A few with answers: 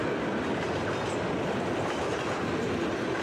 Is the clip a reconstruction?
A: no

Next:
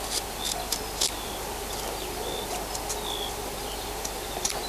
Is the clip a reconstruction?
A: no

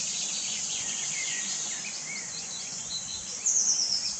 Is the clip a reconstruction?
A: yes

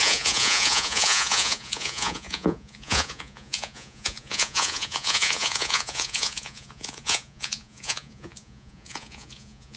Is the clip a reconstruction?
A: yes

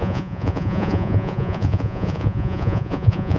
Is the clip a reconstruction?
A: yes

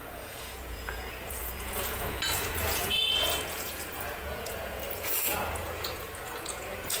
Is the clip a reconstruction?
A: yes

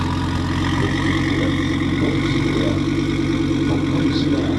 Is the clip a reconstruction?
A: no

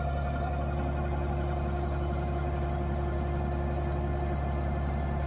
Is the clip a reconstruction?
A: no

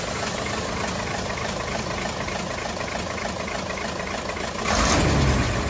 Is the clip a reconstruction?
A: no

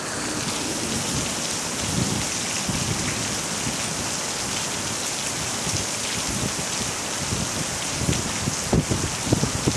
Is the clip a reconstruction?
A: no